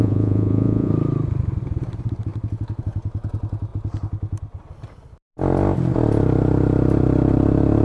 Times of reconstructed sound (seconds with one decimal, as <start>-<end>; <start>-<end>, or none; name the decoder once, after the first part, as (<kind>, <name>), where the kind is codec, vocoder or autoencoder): 0.0-0.9 (vocoder, Vocos)